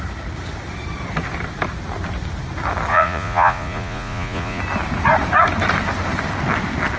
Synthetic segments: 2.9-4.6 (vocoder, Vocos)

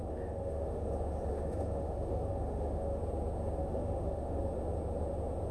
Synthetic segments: 0.0-0.9 (autoencoder, DAC-VAE); 1.3-3.0; 3.6-4.4

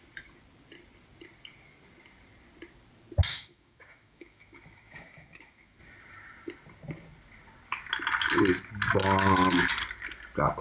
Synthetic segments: 3.3-5.8 (autoencoder, DAC-VAE); 9.0-9.7